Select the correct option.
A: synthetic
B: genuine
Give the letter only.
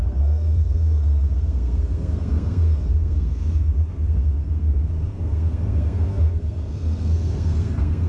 A